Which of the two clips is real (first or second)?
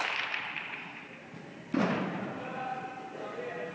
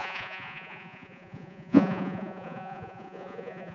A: first